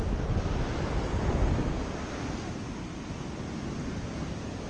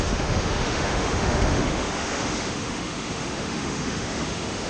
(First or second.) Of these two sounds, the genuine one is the first